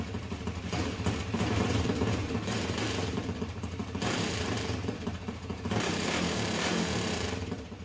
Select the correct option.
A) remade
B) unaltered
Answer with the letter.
A